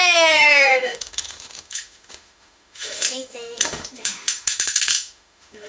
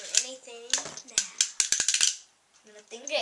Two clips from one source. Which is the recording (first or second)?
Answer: second